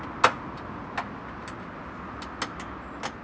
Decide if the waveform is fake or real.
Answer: real